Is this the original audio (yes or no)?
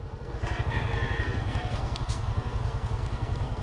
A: no